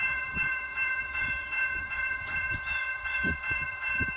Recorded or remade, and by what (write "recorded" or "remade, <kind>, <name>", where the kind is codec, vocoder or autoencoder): remade, vocoder, Vocos